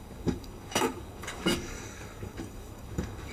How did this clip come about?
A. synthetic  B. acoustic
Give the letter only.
A